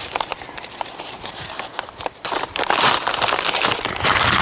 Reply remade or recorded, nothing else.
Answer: remade